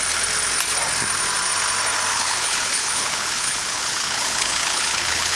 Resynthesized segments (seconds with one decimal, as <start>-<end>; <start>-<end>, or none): 2.1-5.4